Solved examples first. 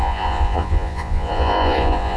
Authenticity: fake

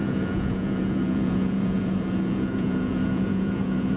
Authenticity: fake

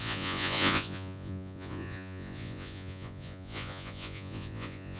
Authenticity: fake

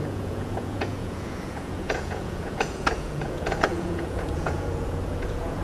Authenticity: fake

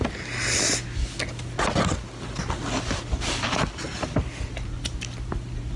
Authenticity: real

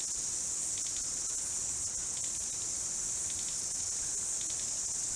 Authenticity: real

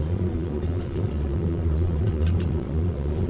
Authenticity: fake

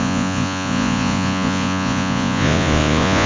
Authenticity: fake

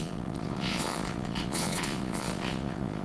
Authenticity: fake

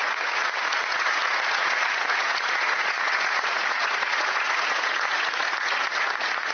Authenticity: fake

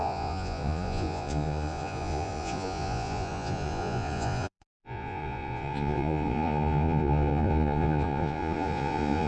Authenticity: fake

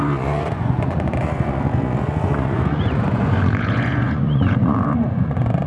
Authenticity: fake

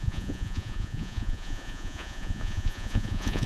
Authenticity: fake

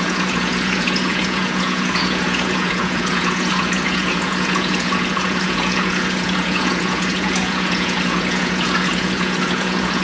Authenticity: fake